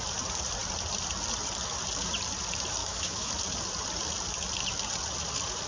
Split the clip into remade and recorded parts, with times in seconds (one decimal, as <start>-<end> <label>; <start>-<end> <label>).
0.0-2.8 recorded; 2.8-3.3 remade; 3.3-5.7 recorded

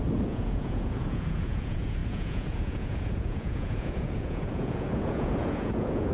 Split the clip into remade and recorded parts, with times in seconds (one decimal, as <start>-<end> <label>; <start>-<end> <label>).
0.0-6.1 remade

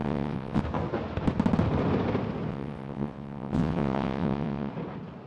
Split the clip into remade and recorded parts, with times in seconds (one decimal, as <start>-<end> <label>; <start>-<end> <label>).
0.0-0.6 remade; 0.6-2.5 recorded; 2.5-4.7 remade; 4.7-5.3 recorded

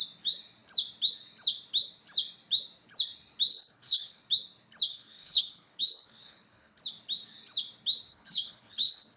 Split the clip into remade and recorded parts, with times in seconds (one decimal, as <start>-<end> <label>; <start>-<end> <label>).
0.0-3.5 recorded; 3.5-4.2 remade; 4.2-4.9 recorded; 4.9-6.8 remade; 6.8-8.1 recorded; 8.1-9.2 remade

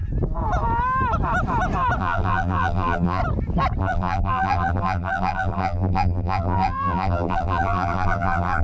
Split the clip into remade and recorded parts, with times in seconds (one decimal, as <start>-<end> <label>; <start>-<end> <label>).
0.0-2.0 recorded; 2.0-3.2 remade; 3.2-3.8 recorded; 3.8-8.6 remade